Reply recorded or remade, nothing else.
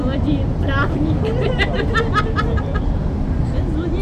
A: recorded